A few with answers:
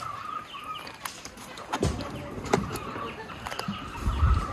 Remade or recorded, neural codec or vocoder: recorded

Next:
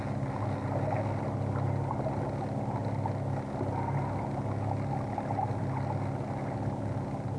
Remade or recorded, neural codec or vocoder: recorded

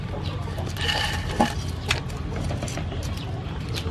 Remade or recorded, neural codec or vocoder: recorded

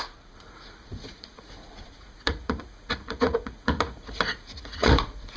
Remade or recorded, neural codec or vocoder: remade, vocoder, Vocos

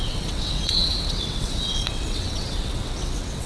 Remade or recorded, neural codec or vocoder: remade, vocoder, WaveNeXt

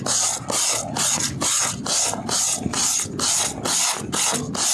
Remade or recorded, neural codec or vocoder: recorded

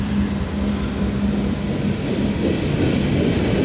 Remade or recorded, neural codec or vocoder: recorded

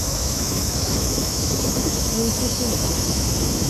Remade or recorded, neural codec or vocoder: remade, autoencoder, DAC-VAE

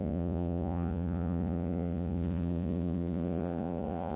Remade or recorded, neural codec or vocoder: remade, vocoder, Vocos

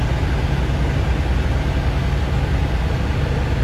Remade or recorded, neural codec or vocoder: recorded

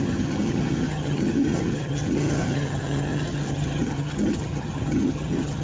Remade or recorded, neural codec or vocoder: remade, vocoder, HiFi-GAN